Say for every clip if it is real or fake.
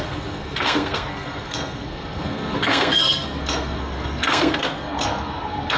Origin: fake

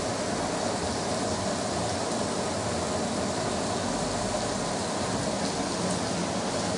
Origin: real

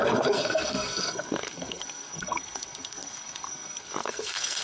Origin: fake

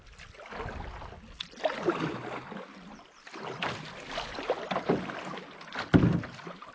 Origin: real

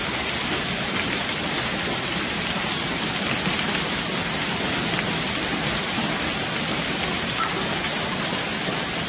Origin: real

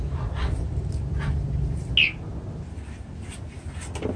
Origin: real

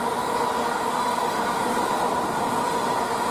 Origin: real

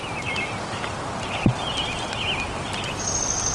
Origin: real